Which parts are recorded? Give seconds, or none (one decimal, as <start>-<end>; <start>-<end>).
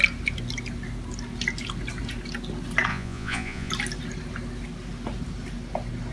0.0-2.9; 3.7-6.1